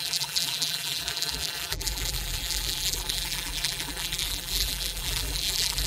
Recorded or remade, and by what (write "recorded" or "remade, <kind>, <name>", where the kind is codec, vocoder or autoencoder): remade, vocoder, BigVGAN v2